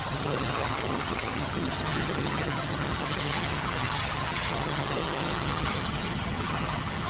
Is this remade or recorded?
remade